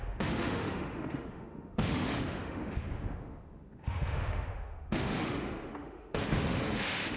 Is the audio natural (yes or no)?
no